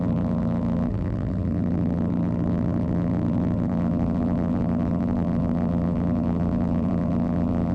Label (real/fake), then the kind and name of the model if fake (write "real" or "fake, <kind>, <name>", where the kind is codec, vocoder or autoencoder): fake, vocoder, BigVGAN v2